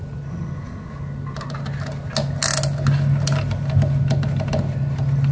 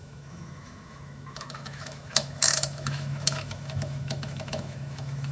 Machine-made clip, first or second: second